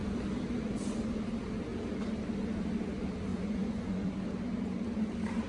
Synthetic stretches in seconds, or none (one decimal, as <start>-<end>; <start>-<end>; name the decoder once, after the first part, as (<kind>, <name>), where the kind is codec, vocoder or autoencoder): 3.3-4.1 (vocoder, Vocos)